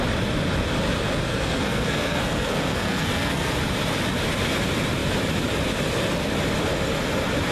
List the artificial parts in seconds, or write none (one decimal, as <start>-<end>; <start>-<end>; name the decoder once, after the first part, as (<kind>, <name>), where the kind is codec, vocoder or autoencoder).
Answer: 1.3-3.5 (codec, SNAC)